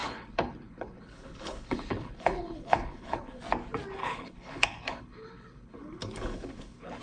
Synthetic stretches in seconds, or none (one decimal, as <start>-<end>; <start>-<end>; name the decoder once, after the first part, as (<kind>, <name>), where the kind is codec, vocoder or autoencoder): 0.0-3.4 (codec, HILCodec); 4.0-7.0